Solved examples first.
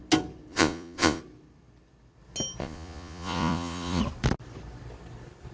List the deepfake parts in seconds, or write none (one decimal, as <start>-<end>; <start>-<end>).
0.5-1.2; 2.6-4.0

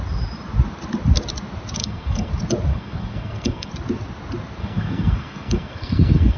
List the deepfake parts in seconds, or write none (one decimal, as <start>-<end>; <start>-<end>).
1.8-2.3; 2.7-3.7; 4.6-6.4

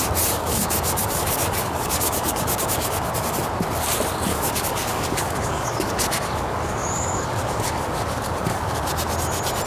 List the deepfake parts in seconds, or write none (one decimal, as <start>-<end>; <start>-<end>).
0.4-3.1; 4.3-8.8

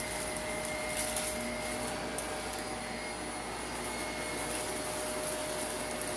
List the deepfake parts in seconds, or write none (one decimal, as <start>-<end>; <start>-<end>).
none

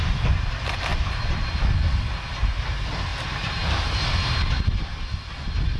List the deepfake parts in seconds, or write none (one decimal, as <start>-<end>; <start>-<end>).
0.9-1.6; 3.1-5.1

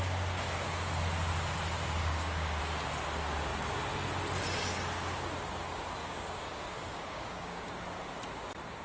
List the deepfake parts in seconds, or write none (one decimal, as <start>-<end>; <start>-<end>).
2.0-2.6; 6.0-7.6

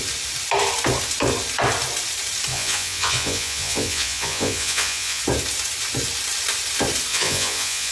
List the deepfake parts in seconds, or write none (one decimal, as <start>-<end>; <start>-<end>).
2.5-5.2; 7.1-7.9

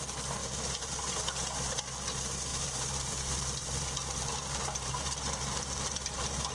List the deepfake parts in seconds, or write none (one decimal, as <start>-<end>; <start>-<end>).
0.4-1.0; 2.5-6.5